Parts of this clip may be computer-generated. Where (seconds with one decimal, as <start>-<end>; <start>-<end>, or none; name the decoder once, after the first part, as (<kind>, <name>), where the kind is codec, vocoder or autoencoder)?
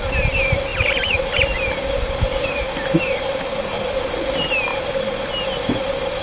0.7-4.1 (vocoder, BigVGAN v2)